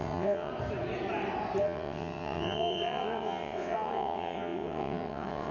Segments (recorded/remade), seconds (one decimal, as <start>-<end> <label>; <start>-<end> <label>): 0.0-0.5 remade; 0.5-1.6 recorded; 1.6-5.5 remade